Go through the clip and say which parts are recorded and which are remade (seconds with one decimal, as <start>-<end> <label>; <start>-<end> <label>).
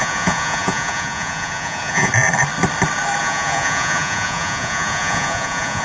0.0-2.1 remade; 2.1-3.2 recorded; 3.2-5.8 remade